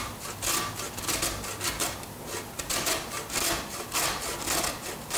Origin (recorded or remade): recorded